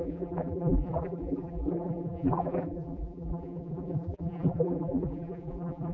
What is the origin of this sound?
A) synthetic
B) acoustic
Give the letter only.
A